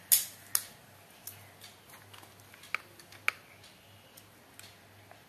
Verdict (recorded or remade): recorded